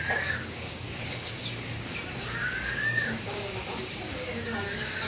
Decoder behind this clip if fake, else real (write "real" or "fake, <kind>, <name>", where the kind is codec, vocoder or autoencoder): fake, codec, DAC